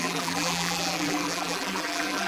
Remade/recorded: remade